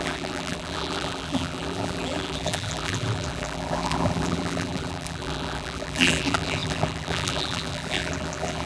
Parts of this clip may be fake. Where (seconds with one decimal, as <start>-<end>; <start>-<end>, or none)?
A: 0.0-8.7